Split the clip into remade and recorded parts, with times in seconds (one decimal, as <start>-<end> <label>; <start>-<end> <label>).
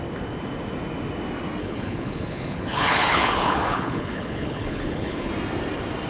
0.0-1.6 recorded; 1.6-5.3 remade; 5.3-6.1 recorded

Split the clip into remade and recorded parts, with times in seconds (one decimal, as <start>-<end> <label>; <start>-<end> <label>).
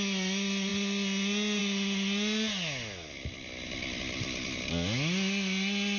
0.0-6.0 recorded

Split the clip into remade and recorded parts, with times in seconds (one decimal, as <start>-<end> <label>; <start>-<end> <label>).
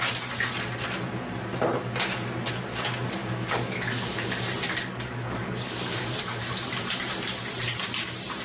0.0-3.2 recorded; 3.2-4.3 remade; 4.3-4.9 recorded; 4.9-6.4 remade; 6.4-8.4 recorded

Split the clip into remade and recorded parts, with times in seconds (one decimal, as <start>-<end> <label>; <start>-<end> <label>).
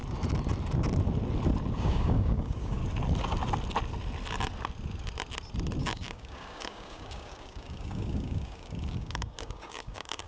0.0-1.8 recorded; 1.8-2.8 remade; 2.8-5.8 recorded; 5.8-10.3 remade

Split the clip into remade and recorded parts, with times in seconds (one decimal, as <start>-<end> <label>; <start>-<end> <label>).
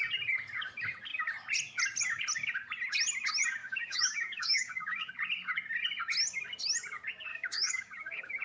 0.0-3.6 recorded; 3.6-5.1 remade; 5.1-7.3 recorded; 7.3-8.4 remade